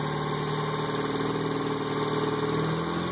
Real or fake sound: real